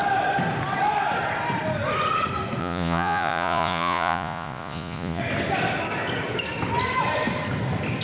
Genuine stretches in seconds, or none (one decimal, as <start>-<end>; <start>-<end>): 0.0-2.6; 5.2-8.0